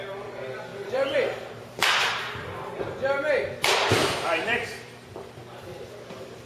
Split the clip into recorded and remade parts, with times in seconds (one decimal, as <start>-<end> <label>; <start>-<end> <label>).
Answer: 0.0-0.7 recorded; 0.7-2.8 remade; 2.8-3.9 recorded; 3.9-5.6 remade; 5.6-6.5 recorded